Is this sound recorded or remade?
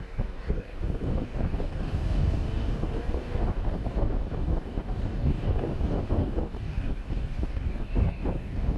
remade